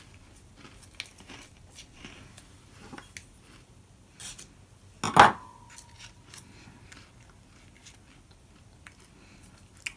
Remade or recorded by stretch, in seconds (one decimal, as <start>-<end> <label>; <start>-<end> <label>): 0.0-10.0 recorded